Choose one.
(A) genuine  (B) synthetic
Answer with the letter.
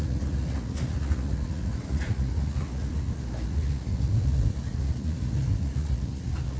B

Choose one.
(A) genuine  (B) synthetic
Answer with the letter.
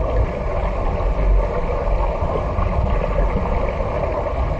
A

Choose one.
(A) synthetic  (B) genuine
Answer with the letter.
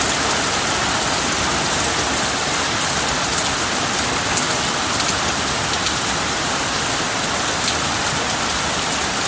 B